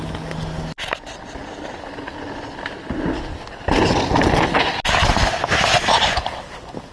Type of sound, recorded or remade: recorded